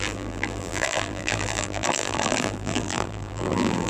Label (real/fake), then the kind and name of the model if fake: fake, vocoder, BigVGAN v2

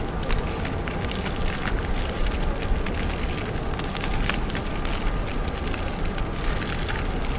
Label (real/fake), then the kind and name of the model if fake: real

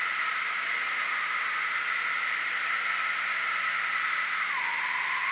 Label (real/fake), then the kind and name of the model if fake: real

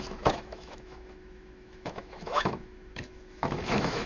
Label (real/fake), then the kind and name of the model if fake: fake, autoencoder, DAC-VAE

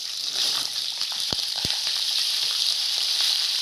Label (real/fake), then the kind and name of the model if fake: fake, vocoder, BigVGAN v2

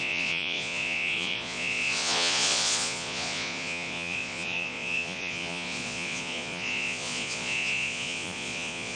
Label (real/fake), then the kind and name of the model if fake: fake, vocoder, Vocos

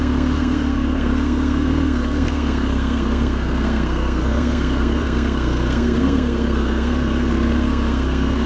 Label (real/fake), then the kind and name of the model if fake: fake, codec, SNAC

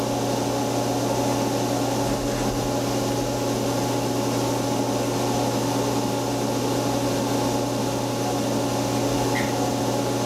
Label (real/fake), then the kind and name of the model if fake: real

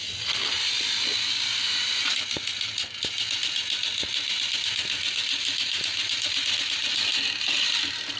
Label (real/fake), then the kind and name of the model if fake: real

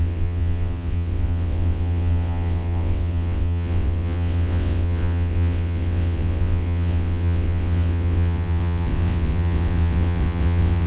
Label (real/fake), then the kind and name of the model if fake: fake, vocoder, WaveNeXt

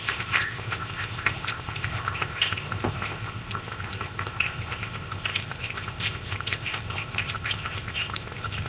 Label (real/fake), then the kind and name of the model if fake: fake, codec, ZipCodec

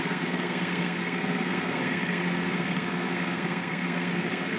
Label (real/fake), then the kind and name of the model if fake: fake, codec, SNAC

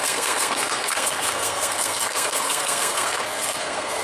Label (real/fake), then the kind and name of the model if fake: fake, codec, SNAC